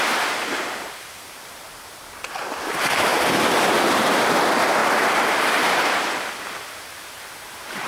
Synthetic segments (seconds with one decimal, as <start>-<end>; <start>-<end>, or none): 0.0-3.1; 3.8-4.8; 6.6-7.9